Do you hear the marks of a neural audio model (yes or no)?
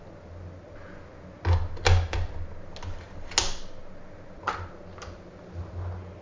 no